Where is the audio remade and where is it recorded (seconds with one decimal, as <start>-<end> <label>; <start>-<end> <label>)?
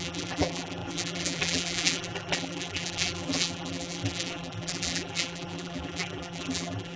0.0-7.0 remade